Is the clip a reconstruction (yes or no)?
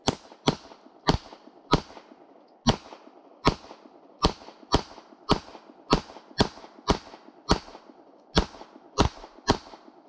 no